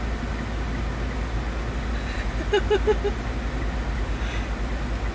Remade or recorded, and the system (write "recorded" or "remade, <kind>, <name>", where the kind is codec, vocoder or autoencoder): recorded